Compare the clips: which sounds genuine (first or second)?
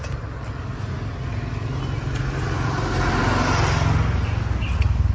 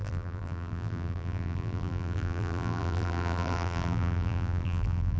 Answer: first